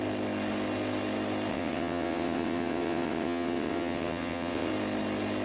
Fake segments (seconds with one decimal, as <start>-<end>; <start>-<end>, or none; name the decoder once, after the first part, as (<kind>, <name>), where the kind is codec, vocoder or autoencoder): 1.5-4.7 (vocoder, WaveNeXt)